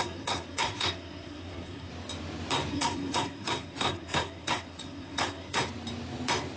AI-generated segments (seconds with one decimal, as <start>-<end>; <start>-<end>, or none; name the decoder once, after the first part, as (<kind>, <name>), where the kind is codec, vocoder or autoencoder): 0.0-1.9 (codec, SNAC); 2.7-5.6